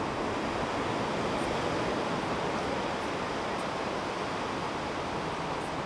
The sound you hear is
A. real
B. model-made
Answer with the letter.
A